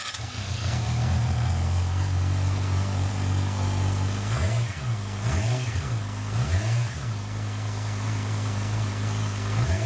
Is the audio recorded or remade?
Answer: remade